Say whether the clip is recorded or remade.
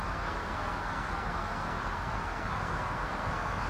remade